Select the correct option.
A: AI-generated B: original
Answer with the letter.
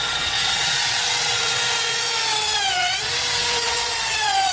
A